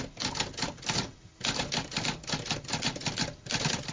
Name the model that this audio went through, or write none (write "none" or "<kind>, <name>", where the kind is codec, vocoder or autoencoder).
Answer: none